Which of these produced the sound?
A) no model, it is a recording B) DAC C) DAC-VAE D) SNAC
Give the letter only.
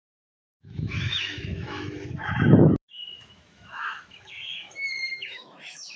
C